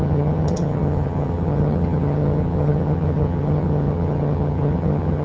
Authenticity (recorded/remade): remade